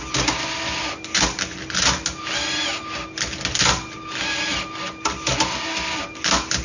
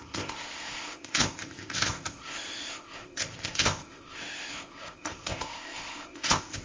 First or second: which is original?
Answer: first